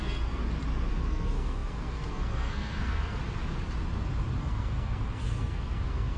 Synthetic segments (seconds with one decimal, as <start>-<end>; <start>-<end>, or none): 0.0-0.4; 0.9-3.2; 4.4-6.2